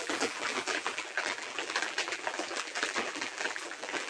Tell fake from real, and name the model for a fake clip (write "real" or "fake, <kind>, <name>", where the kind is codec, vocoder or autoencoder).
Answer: fake, vocoder, BigVGAN v2